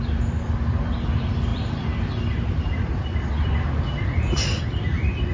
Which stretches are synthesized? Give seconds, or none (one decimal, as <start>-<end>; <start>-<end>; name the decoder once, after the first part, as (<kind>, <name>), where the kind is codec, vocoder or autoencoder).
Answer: 1.5-3.3 (vocoder, BigVGAN v2)